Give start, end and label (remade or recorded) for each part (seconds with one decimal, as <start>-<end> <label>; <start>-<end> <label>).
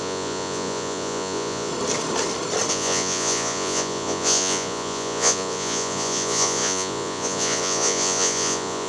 0.0-1.7 remade; 1.7-2.7 recorded; 2.7-8.9 remade